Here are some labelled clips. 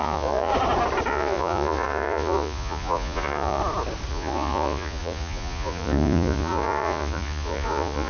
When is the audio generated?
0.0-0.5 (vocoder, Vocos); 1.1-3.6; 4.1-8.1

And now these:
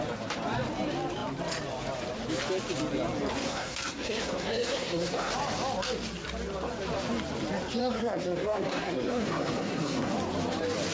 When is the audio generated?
3.4-5.3 (codec, SNAC); 7.8-10.1

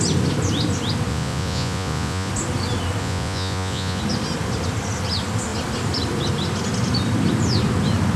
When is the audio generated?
1.1-2.3 (vocoder, Vocos); 3.0-4.0

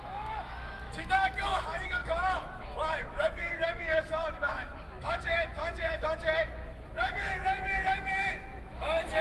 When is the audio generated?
0.0-9.2 (autoencoder, DAC-VAE)

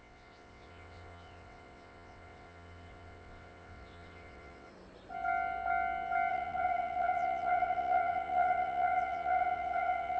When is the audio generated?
0.0-4.7 (vocoder, WaveNeXt); 6.3-10.2

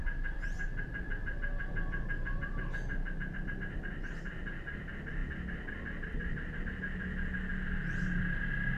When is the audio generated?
0.0-2.6 (vocoder, BigVGAN v2)

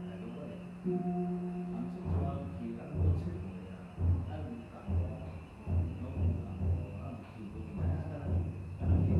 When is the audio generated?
1.0-2.8 (autoencoder, DAC-VAE); 5.9-8.2

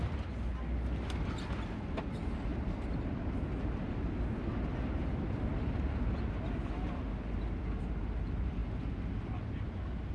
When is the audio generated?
none